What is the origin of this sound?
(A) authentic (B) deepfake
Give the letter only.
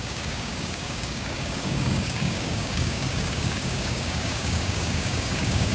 B